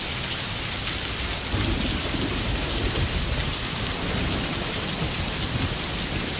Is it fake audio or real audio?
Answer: real